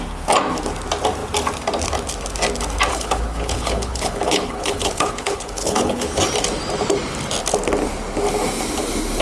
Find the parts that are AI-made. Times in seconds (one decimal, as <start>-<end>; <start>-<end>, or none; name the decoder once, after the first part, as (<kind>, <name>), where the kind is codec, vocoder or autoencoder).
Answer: 2.9-6.2 (codec, HILCodec)